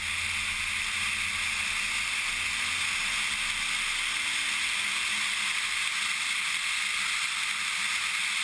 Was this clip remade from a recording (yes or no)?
no